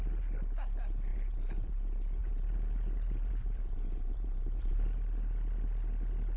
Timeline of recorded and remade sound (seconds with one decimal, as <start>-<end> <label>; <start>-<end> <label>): 0.0-1.1 recorded; 1.1-1.7 remade; 1.7-2.2 recorded; 2.2-4.7 remade; 4.7-6.4 recorded